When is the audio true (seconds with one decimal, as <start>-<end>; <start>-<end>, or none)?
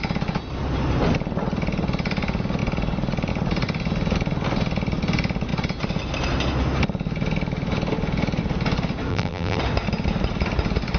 0.0-9.1; 9.6-11.0